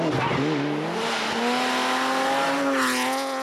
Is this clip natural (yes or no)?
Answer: yes